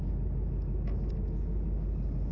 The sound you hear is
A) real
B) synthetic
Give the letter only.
A